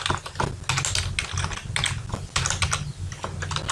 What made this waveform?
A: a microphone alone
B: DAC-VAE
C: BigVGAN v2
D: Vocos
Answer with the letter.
A